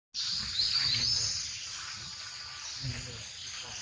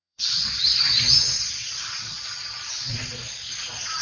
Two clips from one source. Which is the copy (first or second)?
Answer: second